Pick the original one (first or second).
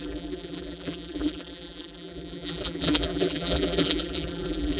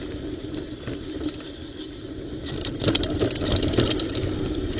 second